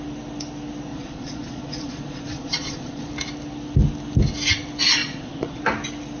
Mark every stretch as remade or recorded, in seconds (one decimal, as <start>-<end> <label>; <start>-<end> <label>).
0.0-0.9 recorded; 0.9-3.1 remade; 3.1-5.0 recorded; 5.0-5.6 remade; 5.6-6.2 recorded